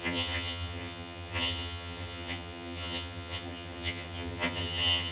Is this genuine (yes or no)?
no